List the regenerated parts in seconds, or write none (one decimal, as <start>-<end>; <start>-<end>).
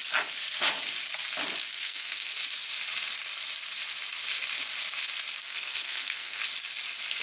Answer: 1.7-2.3; 5.4-6.4